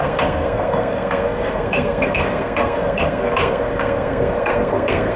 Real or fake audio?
fake